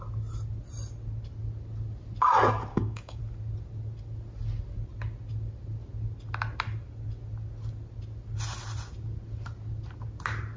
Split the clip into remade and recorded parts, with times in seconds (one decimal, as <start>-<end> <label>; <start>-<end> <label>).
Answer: 0.0-2.7 recorded; 2.7-3.2 remade; 3.2-10.6 recorded